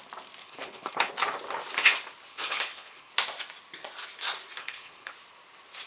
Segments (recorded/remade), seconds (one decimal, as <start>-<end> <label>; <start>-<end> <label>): 0.0-0.4 recorded; 0.4-1.1 remade; 1.1-2.3 recorded; 2.3-3.1 remade; 3.1-4.6 recorded; 4.6-5.1 remade; 5.1-5.9 recorded